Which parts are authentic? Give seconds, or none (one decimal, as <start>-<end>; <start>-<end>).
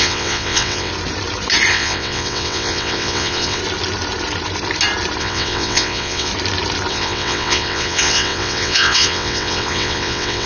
0.9-1.7; 3.6-5.2; 6.3-6.9